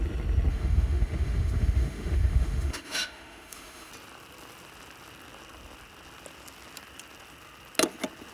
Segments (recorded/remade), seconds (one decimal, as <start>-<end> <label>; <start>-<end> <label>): 0.0-0.5 recorded; 0.5-3.9 remade; 3.9-8.3 recorded